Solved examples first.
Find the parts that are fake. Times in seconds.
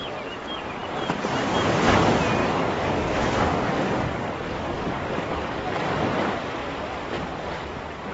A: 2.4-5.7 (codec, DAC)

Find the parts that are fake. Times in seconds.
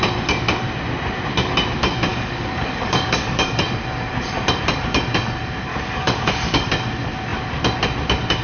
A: 2.1-3.6 (codec, DAC); 5.7-6.7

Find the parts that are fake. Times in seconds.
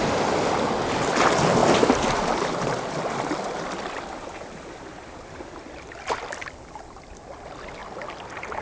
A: none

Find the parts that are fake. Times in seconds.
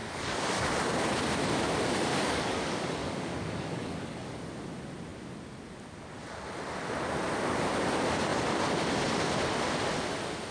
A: 0.0-0.7 (codec, DAC); 2.1-4.4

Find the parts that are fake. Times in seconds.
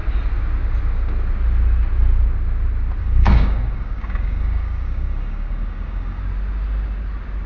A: 3.0-6.2 (codec, DAC)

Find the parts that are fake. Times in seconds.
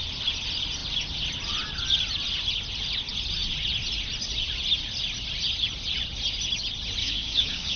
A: 7.0-7.8 (codec, DAC)